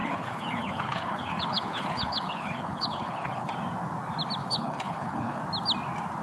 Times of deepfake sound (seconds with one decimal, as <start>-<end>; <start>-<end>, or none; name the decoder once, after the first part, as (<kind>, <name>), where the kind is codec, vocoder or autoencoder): 0.0-3.5 (codec, HILCodec); 4.4-5.4